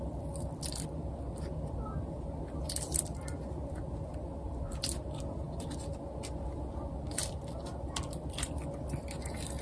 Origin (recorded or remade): recorded